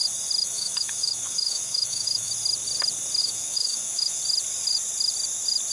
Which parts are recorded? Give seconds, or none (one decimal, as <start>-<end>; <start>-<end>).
0.0-0.4; 2.3-3.2; 4.2-5.7